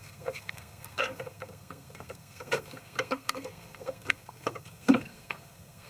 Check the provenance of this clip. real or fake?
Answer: fake